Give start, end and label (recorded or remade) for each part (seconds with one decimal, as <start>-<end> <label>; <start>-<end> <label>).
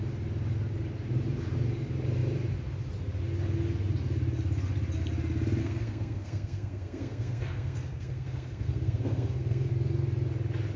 0.0-5.6 recorded; 5.6-9.7 remade; 9.7-10.8 recorded